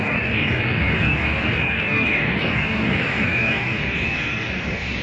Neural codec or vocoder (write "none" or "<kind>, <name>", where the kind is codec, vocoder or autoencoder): codec, DAC